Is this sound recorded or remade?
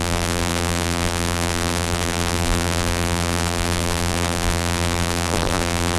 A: remade